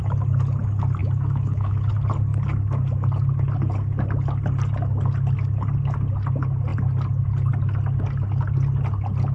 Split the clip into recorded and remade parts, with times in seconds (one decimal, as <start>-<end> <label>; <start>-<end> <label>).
0.0-1.0 recorded; 1.0-1.9 remade; 1.9-9.3 recorded